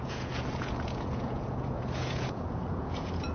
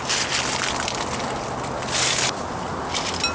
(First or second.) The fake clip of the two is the first